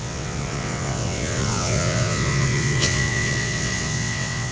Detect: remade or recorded remade